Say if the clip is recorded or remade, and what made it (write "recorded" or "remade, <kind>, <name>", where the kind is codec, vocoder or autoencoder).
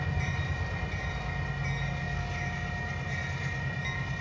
recorded